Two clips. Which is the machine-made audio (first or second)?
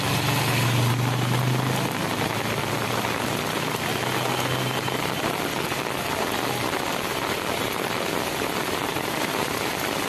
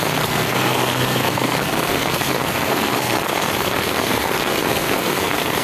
second